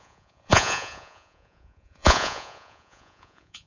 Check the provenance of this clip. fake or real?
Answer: fake